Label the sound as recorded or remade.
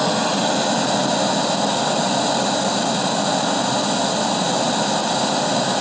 recorded